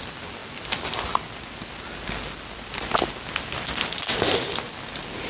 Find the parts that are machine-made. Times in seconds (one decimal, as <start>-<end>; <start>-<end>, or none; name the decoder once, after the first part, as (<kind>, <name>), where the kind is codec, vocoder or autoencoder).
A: none